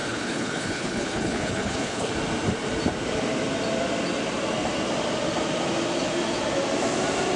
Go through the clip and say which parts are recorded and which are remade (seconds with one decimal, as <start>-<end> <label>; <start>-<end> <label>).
0.0-2.1 remade; 2.1-7.4 recorded